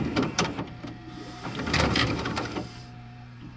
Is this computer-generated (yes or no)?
yes